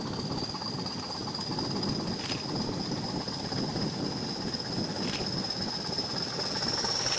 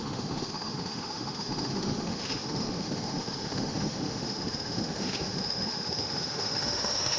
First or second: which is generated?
second